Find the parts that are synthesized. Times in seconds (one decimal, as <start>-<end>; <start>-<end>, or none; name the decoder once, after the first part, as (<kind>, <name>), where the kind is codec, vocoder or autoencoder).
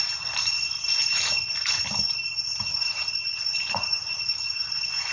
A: 2.7-4.3 (vocoder, Vocos)